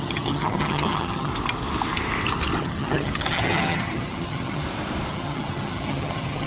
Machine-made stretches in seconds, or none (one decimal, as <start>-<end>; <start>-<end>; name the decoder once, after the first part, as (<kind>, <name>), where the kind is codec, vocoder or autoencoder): 0.0-1.3 (vocoder, HiFi-GAN); 2.6-4.6; 5.1-6.5